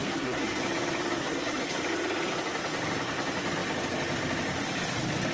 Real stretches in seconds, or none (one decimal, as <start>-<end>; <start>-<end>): 0.6-1.2; 1.8-5.3